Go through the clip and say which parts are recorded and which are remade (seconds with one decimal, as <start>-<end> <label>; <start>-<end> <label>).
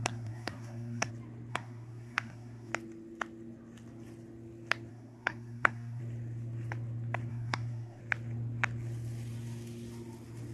0.0-1.1 remade; 1.1-1.5 recorded; 1.5-2.7 remade; 2.7-4.9 recorded; 4.9-6.0 remade; 6.0-7.3 recorded; 7.3-8.0 remade; 8.0-10.5 recorded